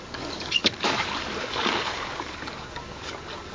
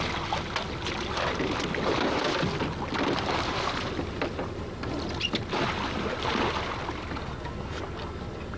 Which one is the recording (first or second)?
second